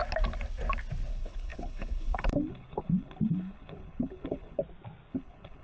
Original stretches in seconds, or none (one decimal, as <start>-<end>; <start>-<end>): 0.0-1.1; 4.6-5.1